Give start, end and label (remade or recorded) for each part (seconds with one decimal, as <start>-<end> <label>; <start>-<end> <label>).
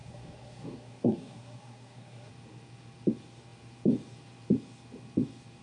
0.0-2.3 remade; 2.3-5.6 recorded